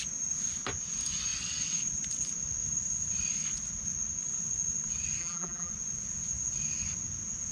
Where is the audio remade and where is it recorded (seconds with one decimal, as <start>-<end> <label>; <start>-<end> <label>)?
0.0-5.2 recorded; 5.2-5.7 remade; 5.7-7.5 recorded